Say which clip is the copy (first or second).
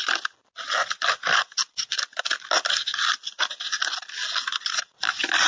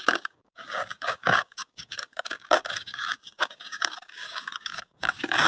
second